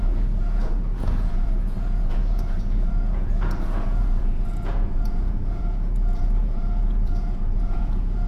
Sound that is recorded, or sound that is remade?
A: remade